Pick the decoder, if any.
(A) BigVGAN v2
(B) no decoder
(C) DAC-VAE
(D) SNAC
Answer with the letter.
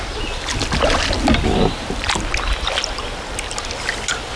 B